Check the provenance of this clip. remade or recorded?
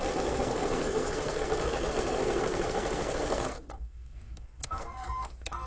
remade